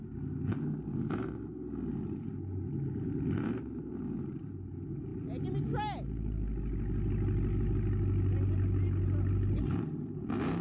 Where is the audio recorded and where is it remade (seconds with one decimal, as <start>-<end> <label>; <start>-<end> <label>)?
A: 0.0-10.6 recorded